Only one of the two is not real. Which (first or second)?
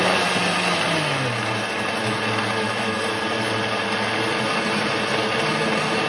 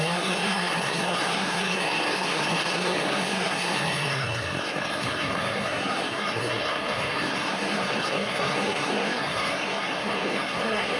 second